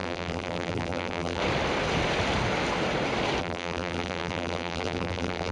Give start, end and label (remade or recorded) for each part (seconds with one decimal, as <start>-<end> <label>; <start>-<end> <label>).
0.0-1.4 remade; 1.4-3.4 recorded; 3.4-5.5 remade